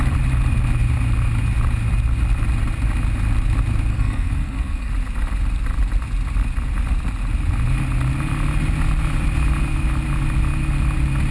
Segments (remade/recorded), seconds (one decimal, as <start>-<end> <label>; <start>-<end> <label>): 0.0-3.9 recorded; 3.9-4.9 remade; 4.9-11.3 recorded